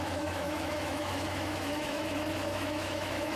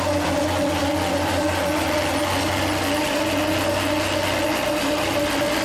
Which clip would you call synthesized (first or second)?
first